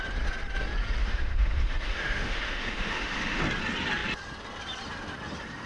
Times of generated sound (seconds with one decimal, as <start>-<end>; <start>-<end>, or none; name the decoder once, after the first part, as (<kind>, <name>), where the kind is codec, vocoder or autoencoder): 1.0-3.4 (autoencoder, DAC-VAE)